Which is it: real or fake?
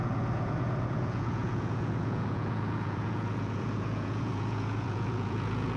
fake